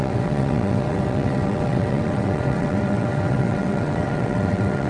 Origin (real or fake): fake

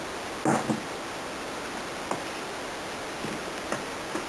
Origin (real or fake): real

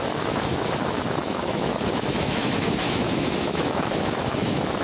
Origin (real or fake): fake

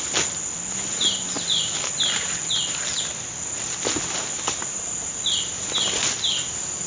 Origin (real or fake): real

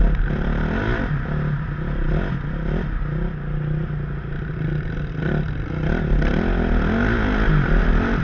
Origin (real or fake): real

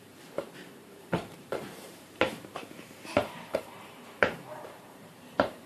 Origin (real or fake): fake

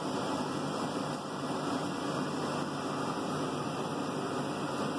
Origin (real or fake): real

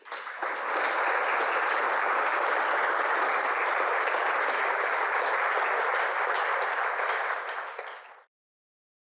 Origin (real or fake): real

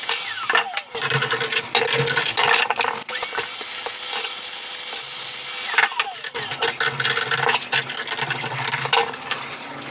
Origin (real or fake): real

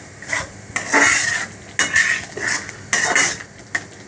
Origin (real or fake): real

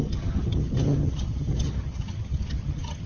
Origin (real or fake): fake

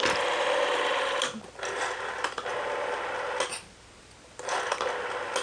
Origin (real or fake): real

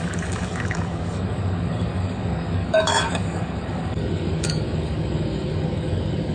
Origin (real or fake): fake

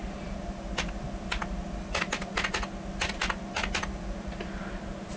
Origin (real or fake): real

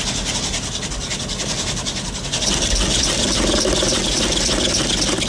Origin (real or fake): real